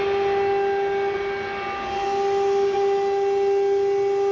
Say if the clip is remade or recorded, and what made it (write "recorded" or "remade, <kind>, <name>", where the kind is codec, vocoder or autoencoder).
recorded